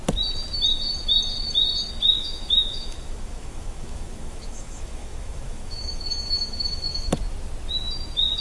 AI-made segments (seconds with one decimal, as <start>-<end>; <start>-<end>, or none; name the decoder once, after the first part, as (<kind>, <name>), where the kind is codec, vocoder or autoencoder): 2.1-7.1 (autoencoder, DAC-VAE)